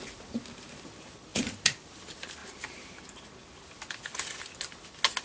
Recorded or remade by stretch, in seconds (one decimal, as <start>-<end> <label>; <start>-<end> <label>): 0.0-1.3 recorded; 1.3-1.9 remade; 1.9-2.4 recorded; 2.4-3.0 remade; 3.0-5.2 recorded